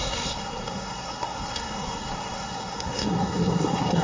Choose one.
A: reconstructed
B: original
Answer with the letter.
A